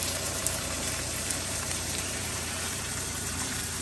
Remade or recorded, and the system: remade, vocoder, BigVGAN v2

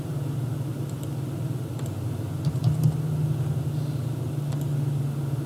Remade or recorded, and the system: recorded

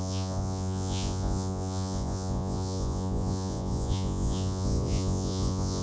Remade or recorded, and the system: remade, vocoder, Vocos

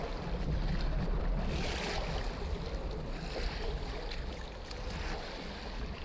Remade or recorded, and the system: recorded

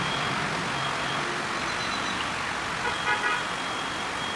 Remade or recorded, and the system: recorded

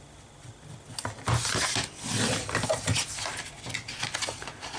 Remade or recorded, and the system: recorded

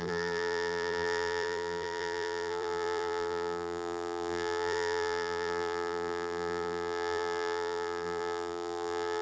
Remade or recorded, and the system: remade, vocoder, BigVGAN v2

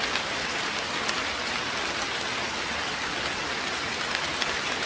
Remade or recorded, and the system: recorded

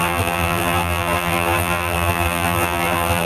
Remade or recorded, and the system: remade, vocoder, BigVGAN v2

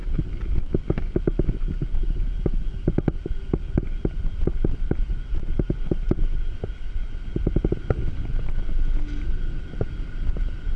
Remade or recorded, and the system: recorded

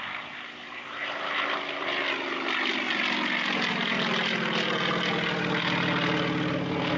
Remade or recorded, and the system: recorded